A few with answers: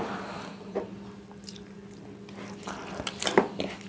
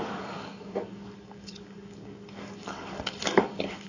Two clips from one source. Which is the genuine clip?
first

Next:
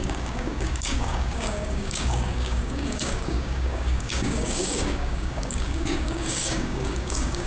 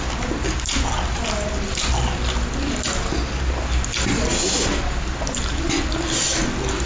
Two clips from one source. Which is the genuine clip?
second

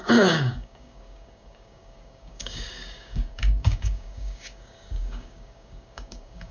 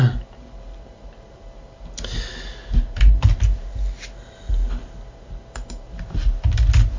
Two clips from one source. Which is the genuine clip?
second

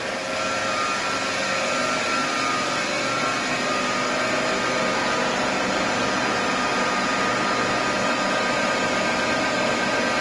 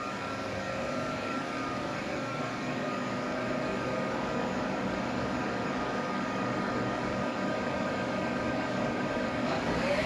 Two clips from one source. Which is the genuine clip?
first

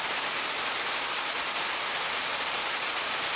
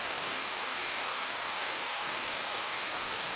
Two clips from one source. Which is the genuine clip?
first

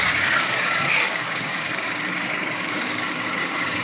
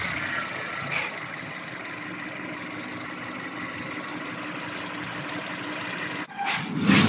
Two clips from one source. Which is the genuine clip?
second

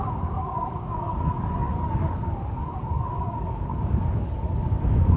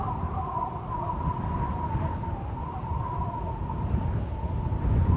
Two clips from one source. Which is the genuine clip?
second